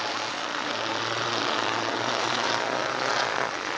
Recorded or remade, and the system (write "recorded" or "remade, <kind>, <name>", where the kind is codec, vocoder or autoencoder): remade, vocoder, Vocos